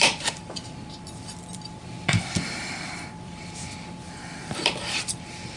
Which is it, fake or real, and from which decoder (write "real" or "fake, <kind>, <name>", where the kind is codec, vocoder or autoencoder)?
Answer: fake, vocoder, BigVGAN v2